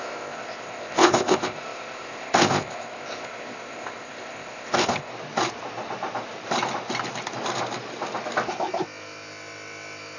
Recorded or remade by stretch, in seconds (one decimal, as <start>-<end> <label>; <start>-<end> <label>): 0.0-5.1 remade; 5.1-10.2 recorded